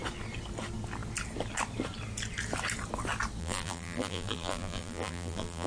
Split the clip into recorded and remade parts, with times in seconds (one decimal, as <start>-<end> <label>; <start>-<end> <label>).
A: 0.0-3.4 recorded; 3.4-5.7 remade